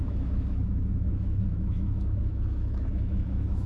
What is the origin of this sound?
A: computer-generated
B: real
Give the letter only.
A